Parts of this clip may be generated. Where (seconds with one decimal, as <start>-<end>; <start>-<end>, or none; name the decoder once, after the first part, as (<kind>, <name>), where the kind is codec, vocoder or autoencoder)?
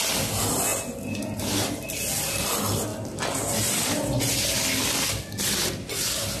2.9-4.3 (vocoder, BigVGAN v2)